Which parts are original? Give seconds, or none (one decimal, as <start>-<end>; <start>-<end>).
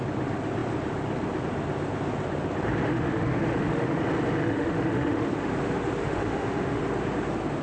0.0-2.9; 4.0-4.4; 5.3-6.0; 6.8-7.6